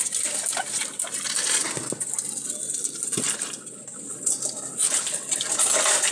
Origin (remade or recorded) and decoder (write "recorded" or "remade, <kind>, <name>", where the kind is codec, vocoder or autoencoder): recorded